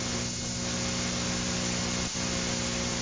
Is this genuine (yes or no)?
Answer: yes